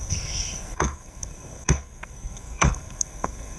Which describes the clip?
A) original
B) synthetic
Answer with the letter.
B